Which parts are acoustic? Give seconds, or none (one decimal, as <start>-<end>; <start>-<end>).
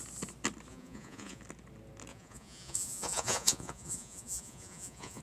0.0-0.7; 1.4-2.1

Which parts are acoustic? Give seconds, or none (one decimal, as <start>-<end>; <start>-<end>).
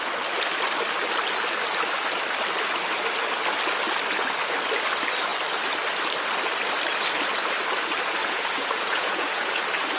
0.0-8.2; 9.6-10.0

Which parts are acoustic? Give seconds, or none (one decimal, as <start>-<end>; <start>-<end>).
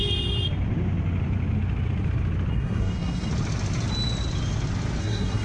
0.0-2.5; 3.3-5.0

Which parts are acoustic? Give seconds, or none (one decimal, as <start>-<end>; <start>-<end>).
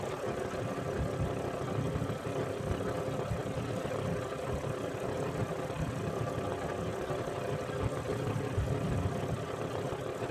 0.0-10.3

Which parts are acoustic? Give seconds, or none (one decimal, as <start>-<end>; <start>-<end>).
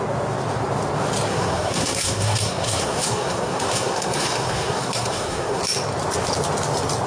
0.0-1.3; 5.6-7.1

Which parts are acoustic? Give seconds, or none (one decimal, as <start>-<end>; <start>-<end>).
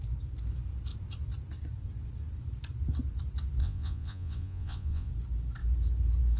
0.0-3.6; 5.1-6.4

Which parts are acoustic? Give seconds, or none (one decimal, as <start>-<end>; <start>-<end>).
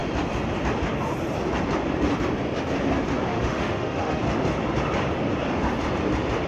0.0-3.3; 4.2-6.5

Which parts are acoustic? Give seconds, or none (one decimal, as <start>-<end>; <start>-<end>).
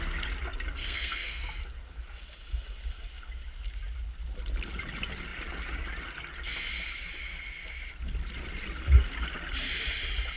0.0-0.8; 1.4-10.4